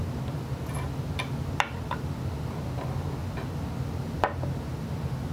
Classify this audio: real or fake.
real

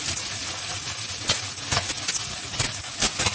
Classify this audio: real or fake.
fake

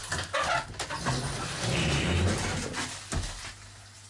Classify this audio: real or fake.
real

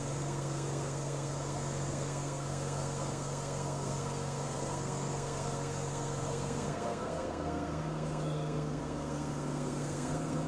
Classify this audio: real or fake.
fake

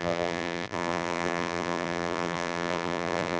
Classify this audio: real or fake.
fake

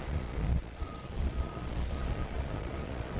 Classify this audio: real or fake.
fake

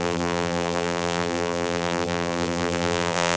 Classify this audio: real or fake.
fake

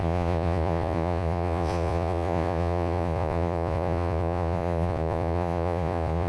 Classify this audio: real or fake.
fake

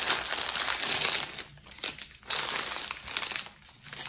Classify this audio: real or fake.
real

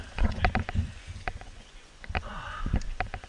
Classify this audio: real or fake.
fake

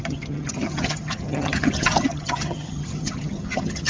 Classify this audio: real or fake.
fake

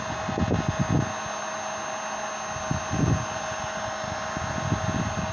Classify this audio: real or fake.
real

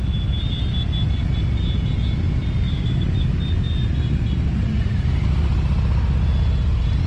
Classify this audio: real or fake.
real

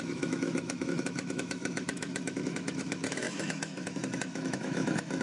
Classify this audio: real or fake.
fake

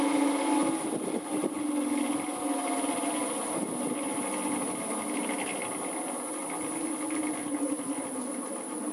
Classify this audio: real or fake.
real